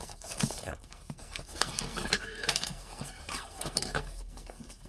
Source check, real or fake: fake